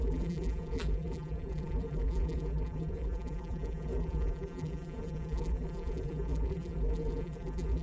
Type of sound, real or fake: fake